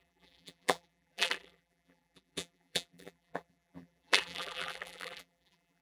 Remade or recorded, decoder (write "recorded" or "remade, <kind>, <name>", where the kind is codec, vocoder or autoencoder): remade, vocoder, BigVGAN v2